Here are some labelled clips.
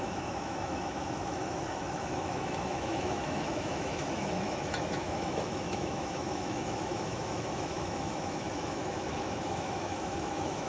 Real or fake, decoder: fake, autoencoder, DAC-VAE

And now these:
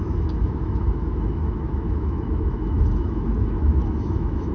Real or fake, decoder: fake, autoencoder, DAC-VAE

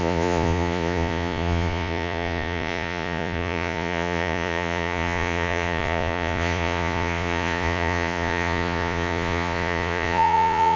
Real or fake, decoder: fake, vocoder, Vocos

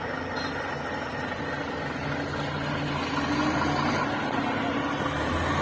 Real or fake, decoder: real